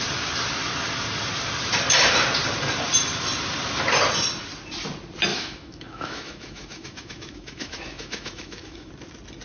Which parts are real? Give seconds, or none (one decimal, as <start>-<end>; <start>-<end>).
0.0-5.3; 8.9-9.4